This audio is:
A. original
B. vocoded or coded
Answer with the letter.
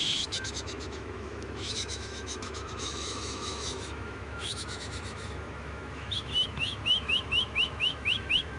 B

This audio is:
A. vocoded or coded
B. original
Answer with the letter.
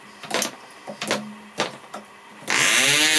B